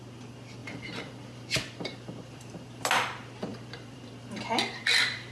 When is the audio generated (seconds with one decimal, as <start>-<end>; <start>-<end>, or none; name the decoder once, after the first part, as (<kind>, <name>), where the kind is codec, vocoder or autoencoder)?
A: 0.6-2.8 (vocoder, BigVGAN v2); 3.5-5.3